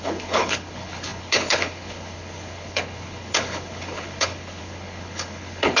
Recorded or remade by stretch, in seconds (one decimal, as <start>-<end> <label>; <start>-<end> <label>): 0.0-5.8 remade